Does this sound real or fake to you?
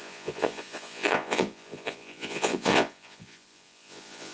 fake